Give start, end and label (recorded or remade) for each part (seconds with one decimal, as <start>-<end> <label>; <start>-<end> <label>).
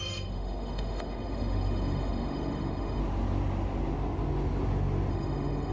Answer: 0.0-3.0 remade; 3.0-5.1 recorded; 5.1-5.7 remade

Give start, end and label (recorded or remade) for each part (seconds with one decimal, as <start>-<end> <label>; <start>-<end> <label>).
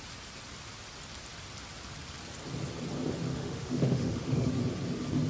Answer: 0.0-3.3 recorded; 3.3-4.5 remade; 4.5-5.3 recorded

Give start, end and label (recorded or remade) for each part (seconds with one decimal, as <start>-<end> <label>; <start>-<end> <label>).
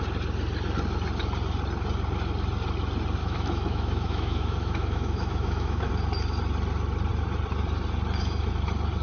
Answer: 0.0-3.2 recorded; 3.2-5.9 remade; 5.9-9.0 recorded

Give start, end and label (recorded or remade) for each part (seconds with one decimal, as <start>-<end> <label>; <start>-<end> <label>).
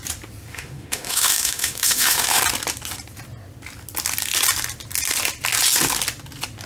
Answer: 0.0-0.5 recorded; 0.5-2.4 remade; 2.4-6.7 recorded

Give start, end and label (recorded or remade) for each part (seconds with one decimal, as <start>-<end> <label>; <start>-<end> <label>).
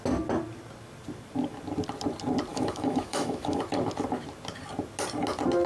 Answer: 0.0-2.5 recorded; 2.5-3.6 remade; 3.6-5.7 recorded